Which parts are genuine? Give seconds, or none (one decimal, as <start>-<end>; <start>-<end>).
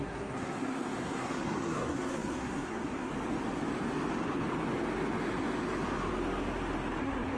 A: 3.1-7.0